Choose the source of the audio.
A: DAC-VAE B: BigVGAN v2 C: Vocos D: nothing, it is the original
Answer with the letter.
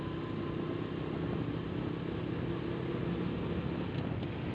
D